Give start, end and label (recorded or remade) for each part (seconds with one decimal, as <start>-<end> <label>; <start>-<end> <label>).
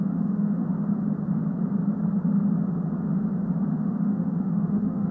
0.0-0.7 remade; 0.7-3.7 recorded; 3.7-5.1 remade